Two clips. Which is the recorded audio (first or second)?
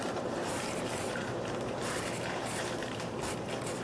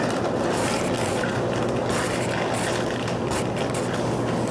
second